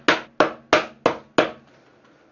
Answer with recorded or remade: recorded